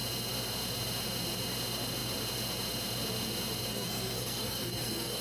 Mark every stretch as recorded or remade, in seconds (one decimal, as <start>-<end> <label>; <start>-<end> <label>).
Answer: 0.0-3.7 recorded; 3.7-5.2 remade